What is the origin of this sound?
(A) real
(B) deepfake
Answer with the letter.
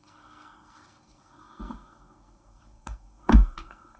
B